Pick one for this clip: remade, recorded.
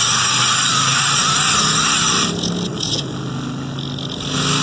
recorded